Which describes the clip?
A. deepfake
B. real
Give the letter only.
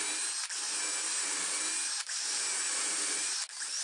B